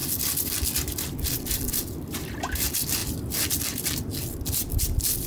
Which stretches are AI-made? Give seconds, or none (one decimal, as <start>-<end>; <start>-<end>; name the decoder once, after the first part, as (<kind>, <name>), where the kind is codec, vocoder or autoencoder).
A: none